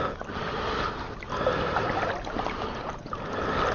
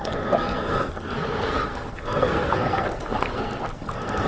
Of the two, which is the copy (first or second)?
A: second